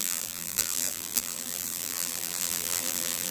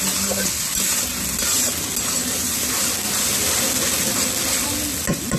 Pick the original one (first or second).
second